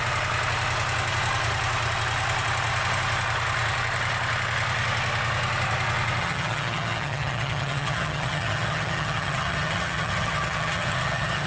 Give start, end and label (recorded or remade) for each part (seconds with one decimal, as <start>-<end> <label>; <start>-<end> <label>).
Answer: 0.0-6.2 recorded; 6.2-11.5 remade